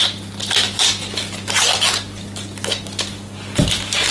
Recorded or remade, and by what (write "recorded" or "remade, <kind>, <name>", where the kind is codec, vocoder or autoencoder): recorded